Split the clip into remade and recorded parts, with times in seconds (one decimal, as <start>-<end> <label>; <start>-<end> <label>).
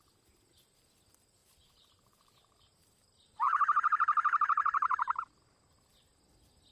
0.0-1.4 recorded; 1.4-5.4 remade; 5.4-6.7 recorded